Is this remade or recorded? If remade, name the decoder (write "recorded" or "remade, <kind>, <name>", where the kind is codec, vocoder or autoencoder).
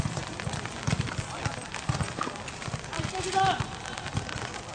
recorded